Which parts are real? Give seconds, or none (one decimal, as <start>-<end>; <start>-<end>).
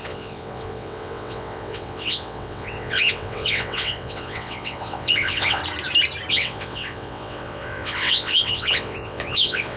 5.6-6.3